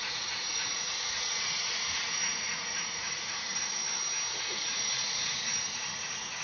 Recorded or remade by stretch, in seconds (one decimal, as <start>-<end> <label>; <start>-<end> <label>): 0.0-3.8 remade; 3.8-4.4 recorded; 4.4-6.4 remade